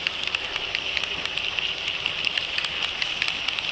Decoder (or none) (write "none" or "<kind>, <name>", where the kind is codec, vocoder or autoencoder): none